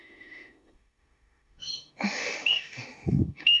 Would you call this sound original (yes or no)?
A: no